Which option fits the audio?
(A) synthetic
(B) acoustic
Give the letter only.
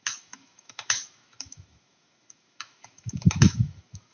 A